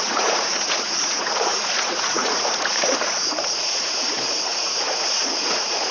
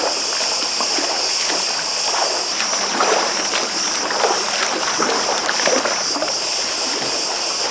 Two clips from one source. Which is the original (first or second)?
second